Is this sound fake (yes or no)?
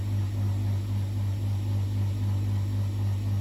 no